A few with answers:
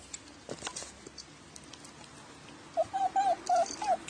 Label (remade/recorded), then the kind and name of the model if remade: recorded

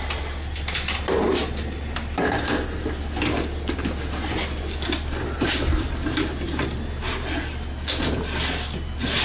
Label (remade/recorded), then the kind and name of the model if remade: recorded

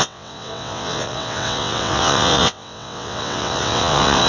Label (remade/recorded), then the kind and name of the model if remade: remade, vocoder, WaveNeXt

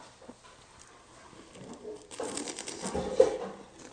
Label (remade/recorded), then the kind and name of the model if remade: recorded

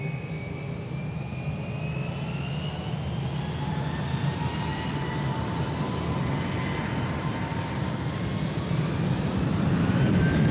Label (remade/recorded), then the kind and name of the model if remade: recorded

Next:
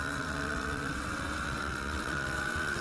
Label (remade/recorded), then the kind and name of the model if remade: remade, vocoder, WaveNeXt